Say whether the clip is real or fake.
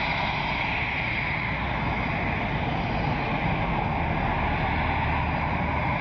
real